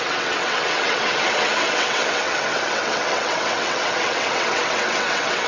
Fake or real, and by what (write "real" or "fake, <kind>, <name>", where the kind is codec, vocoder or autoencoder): fake, vocoder, WaveNeXt